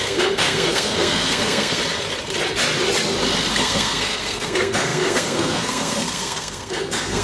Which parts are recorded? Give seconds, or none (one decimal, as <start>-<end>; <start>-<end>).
1.8-3.5